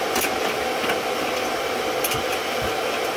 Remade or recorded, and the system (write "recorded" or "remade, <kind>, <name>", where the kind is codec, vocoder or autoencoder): recorded